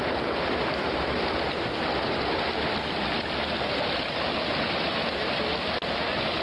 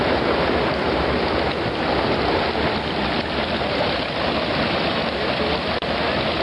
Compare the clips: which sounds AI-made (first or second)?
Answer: second